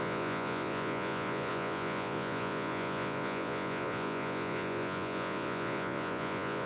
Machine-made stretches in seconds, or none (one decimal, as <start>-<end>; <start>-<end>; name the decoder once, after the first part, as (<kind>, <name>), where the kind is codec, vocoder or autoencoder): 0.0-6.7 (vocoder, Vocos)